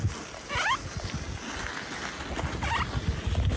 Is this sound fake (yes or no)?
no